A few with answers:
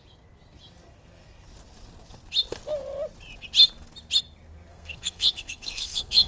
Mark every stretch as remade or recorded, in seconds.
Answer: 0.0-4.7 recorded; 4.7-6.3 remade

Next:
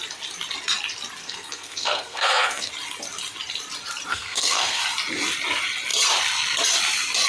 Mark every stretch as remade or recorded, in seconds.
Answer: 0.0-1.2 recorded; 1.2-2.7 remade; 2.7-4.1 recorded; 4.1-4.8 remade; 4.8-7.3 recorded

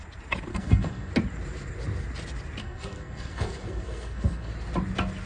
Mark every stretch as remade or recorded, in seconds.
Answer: 0.0-0.5 recorded; 0.5-1.1 remade; 1.1-2.6 recorded; 2.6-4.5 remade; 4.5-5.3 recorded

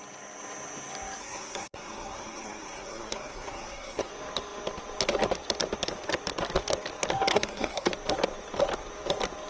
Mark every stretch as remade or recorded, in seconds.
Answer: 0.0-1.2 recorded; 1.2-4.1 remade; 4.1-7.3 recorded; 7.3-7.9 remade; 7.9-9.5 recorded